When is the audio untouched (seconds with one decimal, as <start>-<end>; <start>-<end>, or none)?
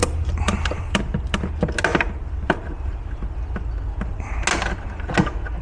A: 1.0-1.9; 3.2-5.6